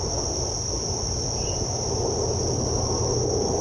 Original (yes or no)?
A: yes